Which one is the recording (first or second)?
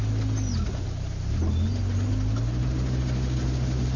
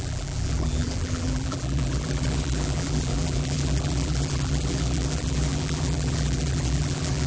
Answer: first